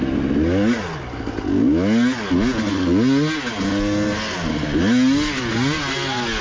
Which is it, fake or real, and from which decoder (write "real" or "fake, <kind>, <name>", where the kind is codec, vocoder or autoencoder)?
real